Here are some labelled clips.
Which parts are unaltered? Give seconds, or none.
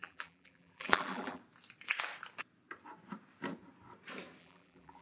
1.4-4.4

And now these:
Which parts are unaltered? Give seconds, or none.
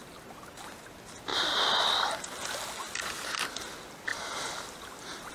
0.0-5.3